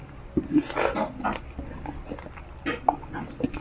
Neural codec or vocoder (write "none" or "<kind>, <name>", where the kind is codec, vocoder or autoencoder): none